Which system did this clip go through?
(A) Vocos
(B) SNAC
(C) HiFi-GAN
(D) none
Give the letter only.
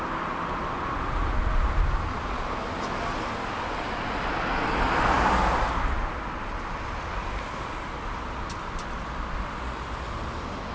D